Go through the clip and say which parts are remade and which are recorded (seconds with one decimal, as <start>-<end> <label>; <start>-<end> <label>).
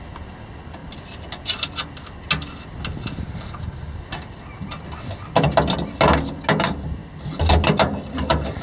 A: 0.0-8.6 recorded